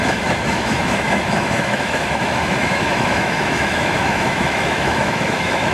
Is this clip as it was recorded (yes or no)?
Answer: no